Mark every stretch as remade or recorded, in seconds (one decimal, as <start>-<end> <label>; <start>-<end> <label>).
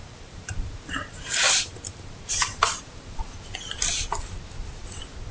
0.0-3.2 remade; 3.2-5.3 recorded